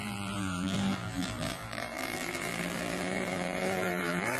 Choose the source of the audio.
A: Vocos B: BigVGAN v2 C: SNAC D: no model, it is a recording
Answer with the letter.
B